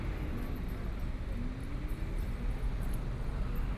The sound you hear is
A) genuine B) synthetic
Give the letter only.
A